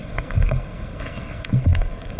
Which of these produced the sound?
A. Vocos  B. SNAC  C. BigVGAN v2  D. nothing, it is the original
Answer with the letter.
B